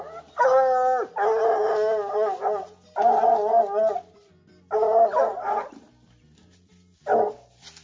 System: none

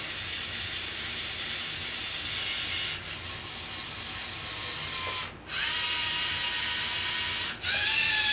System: none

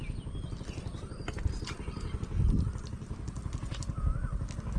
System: none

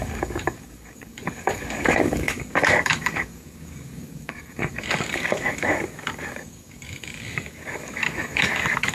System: codec, DAC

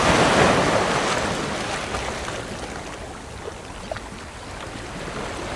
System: none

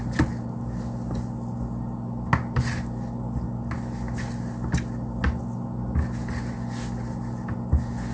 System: none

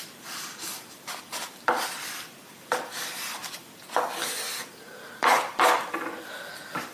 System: vocoder, BigVGAN v2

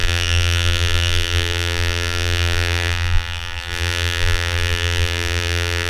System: vocoder, BigVGAN v2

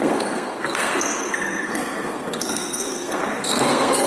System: codec, SNAC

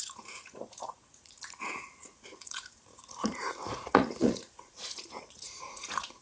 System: vocoder, Vocos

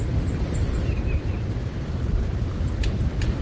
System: none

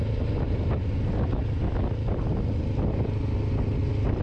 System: none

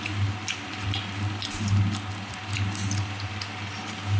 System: none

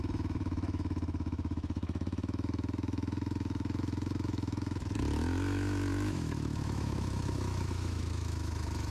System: autoencoder, DAC-VAE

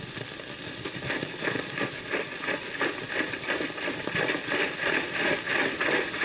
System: vocoder, BigVGAN v2